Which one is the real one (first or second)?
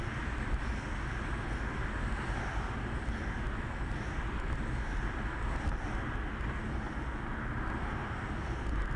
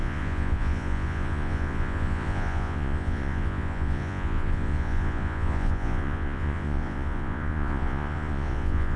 first